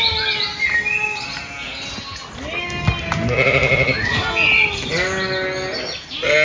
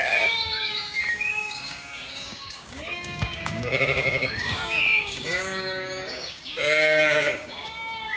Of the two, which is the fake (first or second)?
second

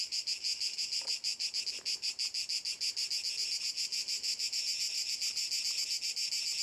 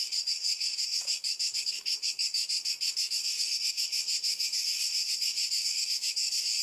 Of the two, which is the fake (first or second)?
second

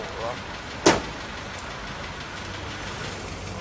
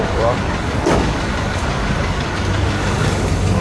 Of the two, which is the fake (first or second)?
second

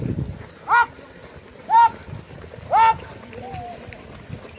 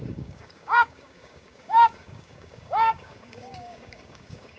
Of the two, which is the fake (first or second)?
second